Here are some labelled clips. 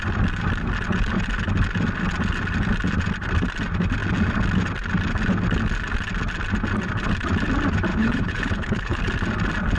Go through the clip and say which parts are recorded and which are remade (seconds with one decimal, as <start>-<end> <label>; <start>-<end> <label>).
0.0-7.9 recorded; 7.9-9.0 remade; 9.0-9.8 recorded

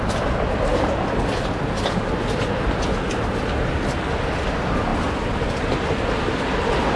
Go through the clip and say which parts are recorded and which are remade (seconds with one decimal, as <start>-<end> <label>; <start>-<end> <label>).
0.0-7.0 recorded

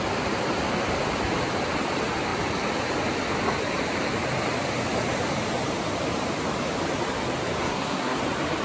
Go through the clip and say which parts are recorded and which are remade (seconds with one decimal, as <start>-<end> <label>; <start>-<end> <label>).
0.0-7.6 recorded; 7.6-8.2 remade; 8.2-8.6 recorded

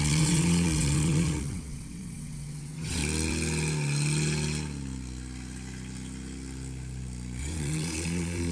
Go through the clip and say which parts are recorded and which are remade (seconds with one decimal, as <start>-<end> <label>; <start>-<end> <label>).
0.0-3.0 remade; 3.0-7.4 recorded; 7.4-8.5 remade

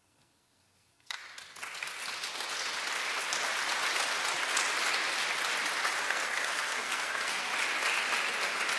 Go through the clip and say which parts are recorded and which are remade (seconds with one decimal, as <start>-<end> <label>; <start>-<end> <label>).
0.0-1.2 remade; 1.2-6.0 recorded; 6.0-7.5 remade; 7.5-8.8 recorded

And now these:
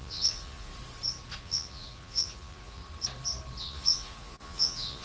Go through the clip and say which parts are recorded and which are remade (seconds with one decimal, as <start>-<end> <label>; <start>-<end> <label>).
0.0-0.7 remade; 0.7-1.4 recorded; 1.4-2.8 remade; 2.8-3.6 recorded; 3.6-5.0 remade